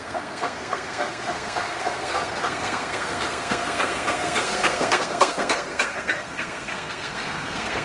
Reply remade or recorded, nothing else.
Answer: remade